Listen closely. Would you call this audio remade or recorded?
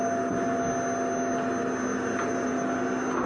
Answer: recorded